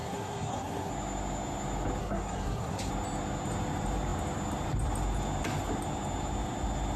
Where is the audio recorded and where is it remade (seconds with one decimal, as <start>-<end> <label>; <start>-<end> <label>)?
0.0-0.9 remade; 0.9-2.0 recorded; 2.0-2.9 remade; 2.9-7.0 recorded